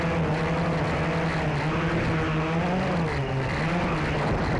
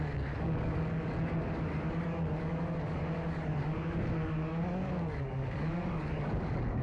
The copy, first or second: second